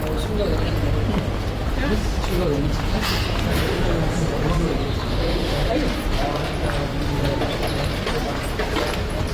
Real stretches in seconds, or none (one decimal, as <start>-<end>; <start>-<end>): 0.0-5.1; 5.7-9.3